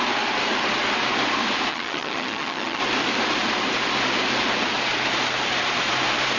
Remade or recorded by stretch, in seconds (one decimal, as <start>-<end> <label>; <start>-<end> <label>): 0.0-1.7 recorded; 1.7-2.8 remade; 2.8-6.4 recorded

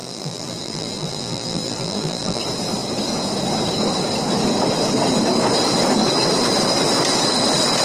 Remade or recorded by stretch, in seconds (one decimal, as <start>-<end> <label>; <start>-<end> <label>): 0.0-2.4 remade; 2.4-7.8 recorded

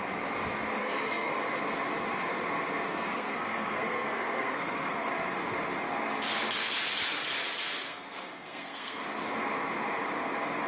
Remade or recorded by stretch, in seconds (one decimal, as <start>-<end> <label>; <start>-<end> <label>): 0.0-0.8 recorded; 0.8-1.3 remade; 1.3-2.9 recorded; 2.9-5.1 remade; 5.1-7.9 recorded; 7.9-9.0 remade; 9.0-10.7 recorded

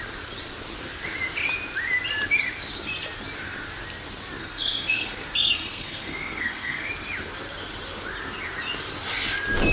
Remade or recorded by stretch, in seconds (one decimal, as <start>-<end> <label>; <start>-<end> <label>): 0.0-4.4 recorded; 4.4-6.9 remade; 6.9-9.7 recorded